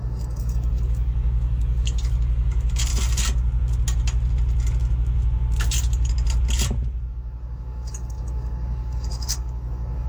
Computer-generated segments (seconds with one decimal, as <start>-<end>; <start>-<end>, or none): 0.0-2.9; 7.1-10.1